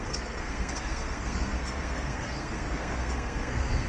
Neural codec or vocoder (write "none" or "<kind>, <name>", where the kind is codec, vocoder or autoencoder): codec, SNAC